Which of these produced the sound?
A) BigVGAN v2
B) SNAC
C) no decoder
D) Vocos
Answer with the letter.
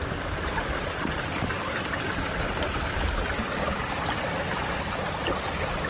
A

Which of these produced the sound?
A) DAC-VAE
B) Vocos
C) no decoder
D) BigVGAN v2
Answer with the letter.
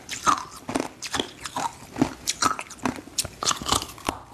C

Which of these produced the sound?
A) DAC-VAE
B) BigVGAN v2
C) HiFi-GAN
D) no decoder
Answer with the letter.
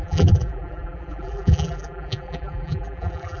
B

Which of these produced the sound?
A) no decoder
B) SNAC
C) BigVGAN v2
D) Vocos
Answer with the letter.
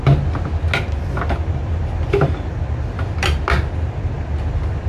A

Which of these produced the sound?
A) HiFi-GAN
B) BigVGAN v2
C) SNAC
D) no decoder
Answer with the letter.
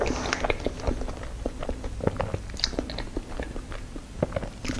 D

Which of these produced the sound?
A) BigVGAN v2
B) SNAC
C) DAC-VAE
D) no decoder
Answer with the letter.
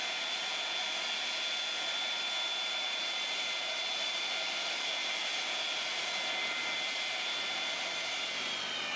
D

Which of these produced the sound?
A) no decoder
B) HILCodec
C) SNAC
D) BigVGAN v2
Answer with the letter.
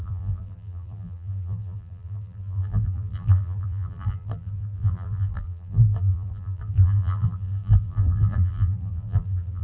D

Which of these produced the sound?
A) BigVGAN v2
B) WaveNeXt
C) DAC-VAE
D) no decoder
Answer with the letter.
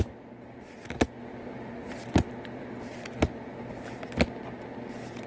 D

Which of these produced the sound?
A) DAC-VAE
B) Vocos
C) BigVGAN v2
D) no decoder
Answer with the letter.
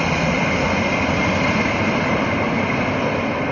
C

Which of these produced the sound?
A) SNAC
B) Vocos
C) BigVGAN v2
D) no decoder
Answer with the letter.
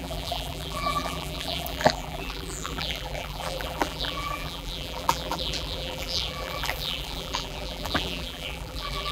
C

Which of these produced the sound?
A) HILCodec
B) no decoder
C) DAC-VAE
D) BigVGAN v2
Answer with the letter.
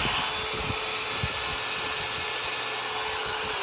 B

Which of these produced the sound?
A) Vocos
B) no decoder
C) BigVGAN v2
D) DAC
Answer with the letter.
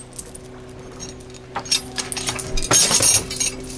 B